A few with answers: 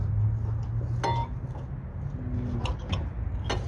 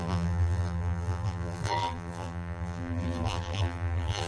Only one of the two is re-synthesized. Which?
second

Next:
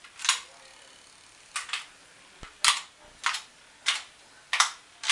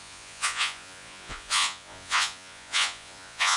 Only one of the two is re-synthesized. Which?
second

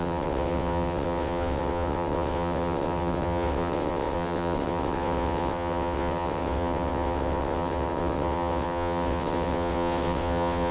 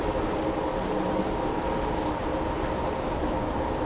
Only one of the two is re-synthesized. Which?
first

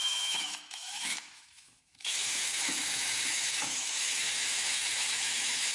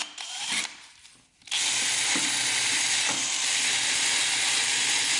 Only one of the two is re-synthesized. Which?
first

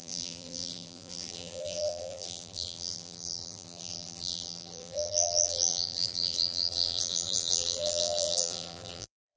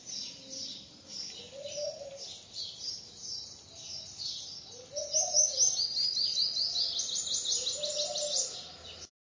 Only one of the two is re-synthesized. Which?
first